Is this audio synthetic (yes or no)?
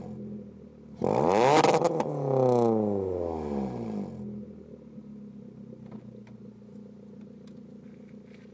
no